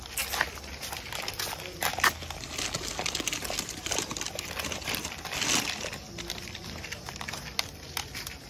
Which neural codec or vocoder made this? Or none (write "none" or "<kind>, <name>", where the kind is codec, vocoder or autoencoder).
none